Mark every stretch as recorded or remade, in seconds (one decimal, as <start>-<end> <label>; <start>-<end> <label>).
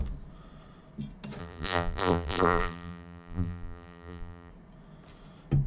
0.0-1.4 recorded; 1.4-4.5 remade; 4.5-5.7 recorded